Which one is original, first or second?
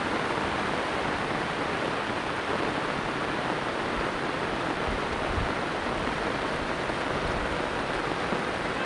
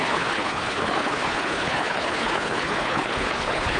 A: first